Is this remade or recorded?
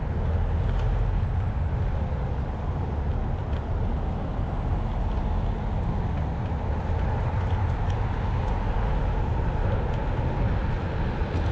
recorded